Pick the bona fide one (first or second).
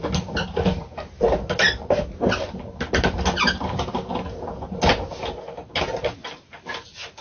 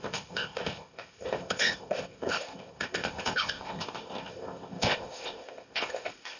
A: first